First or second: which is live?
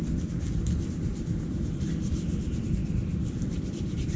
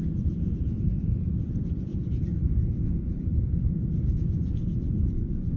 first